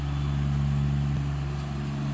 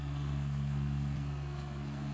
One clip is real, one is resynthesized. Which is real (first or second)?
first